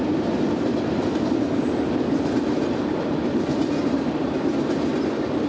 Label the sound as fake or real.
real